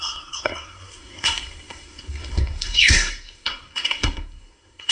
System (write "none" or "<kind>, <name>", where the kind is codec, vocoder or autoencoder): codec, SNAC